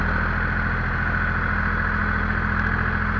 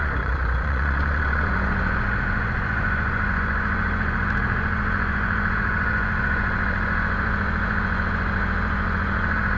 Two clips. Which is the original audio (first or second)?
first